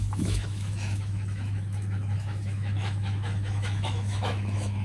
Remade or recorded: remade